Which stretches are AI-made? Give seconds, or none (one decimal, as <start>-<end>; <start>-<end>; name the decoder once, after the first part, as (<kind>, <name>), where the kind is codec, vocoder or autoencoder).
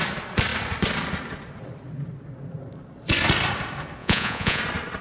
4.0-4.6 (vocoder, Vocos)